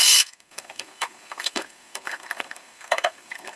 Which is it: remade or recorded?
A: remade